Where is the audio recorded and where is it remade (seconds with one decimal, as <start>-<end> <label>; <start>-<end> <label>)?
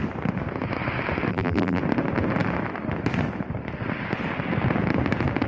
0.0-1.3 recorded; 1.3-1.8 remade; 1.8-5.5 recorded